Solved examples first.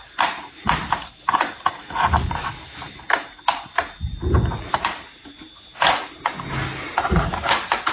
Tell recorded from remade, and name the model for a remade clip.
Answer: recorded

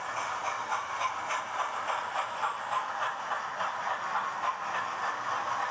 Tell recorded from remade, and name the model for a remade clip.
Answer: remade, vocoder, BigVGAN v2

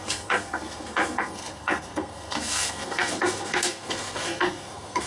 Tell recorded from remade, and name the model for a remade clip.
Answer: remade, codec, SNAC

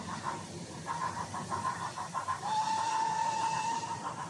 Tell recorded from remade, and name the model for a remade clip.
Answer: remade, vocoder, BigVGAN v2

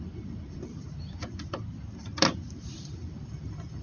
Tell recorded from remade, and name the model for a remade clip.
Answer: remade, vocoder, BigVGAN v2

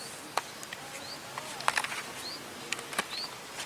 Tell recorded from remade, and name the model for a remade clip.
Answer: recorded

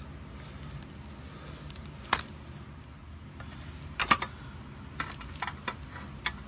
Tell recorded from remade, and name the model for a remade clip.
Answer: recorded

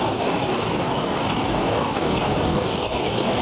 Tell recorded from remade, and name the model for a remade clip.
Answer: remade, codec, DAC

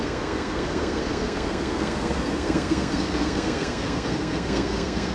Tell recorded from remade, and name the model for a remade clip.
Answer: remade, codec, SNAC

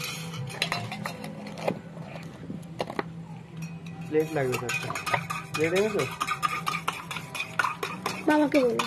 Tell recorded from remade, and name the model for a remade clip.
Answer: recorded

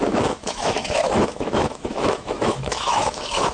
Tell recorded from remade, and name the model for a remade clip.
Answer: remade, autoencoder, DAC-VAE